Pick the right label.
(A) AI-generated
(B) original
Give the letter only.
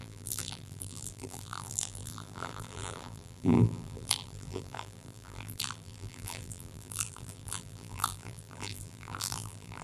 A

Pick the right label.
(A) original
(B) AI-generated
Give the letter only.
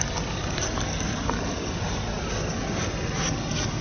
A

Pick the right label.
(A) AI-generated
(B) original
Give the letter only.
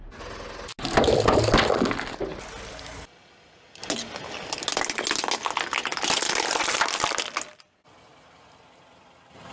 B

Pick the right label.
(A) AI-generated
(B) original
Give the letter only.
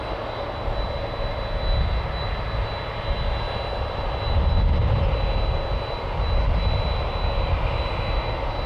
B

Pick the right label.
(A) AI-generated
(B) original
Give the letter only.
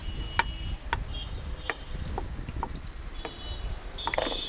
B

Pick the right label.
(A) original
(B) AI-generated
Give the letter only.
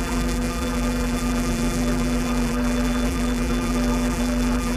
B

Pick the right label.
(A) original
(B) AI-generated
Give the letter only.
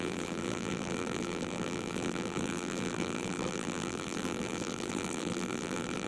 B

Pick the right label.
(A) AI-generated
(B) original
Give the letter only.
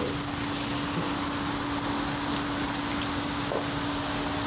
B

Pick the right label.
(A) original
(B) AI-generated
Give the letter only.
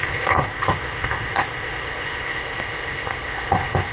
B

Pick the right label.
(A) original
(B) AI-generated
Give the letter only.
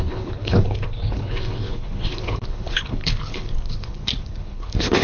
B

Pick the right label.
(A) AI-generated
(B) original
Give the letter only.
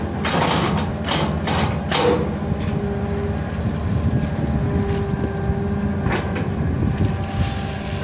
B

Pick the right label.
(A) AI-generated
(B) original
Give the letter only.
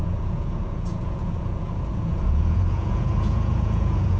A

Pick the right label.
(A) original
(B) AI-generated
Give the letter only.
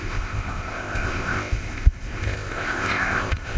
B